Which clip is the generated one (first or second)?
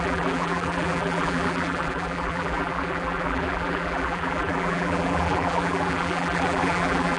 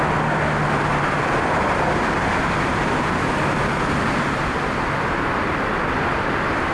first